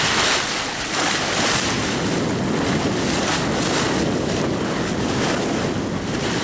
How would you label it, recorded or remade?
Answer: recorded